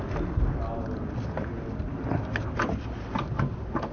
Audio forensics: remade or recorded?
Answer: recorded